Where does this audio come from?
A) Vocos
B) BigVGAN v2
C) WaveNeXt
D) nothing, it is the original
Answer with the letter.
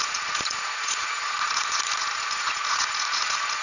A